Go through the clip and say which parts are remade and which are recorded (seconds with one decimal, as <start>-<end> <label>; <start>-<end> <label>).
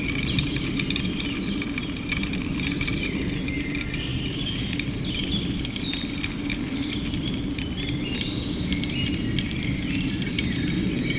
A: 0.0-11.2 recorded